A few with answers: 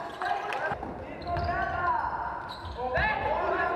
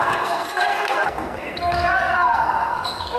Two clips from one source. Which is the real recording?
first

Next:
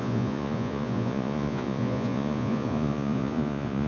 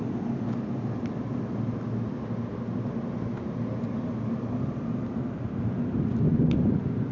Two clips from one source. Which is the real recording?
second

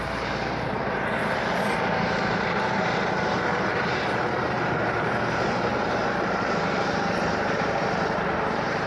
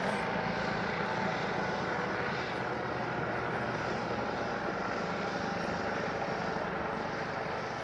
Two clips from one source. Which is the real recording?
second